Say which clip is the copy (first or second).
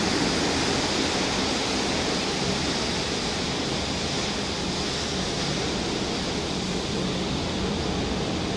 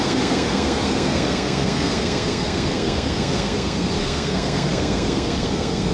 second